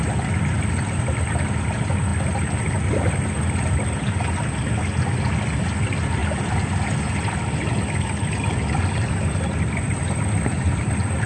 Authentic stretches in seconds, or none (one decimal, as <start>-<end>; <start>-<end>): 0.0-11.3